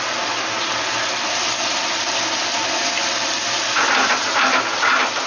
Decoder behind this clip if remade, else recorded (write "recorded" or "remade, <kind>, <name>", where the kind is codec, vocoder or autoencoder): recorded